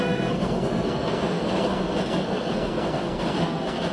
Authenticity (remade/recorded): remade